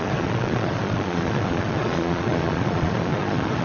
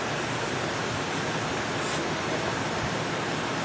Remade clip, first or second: first